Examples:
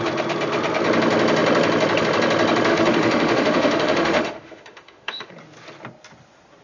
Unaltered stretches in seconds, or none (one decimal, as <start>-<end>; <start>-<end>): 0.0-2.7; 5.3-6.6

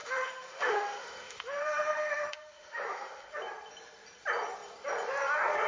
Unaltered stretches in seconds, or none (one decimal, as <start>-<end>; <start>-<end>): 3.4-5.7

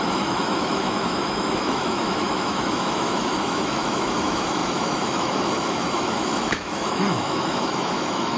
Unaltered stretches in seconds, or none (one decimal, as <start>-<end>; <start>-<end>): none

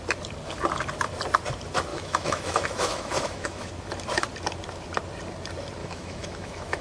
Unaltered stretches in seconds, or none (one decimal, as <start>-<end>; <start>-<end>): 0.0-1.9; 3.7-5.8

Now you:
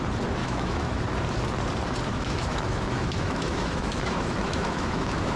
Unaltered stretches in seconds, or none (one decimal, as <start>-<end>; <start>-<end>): 0.0-0.4; 1.0-2.1